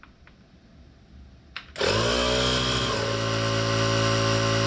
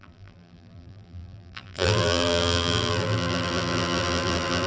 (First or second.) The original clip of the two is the first